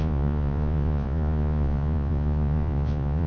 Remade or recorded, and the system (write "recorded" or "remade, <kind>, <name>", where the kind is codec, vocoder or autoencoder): remade, vocoder, Vocos